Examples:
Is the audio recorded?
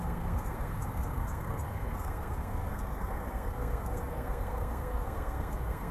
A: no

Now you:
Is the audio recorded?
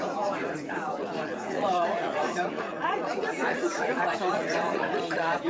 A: no